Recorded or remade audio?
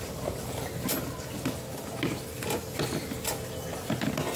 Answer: recorded